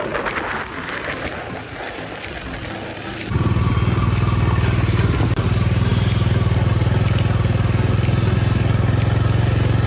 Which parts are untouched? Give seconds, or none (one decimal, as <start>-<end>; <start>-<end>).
0.0-9.9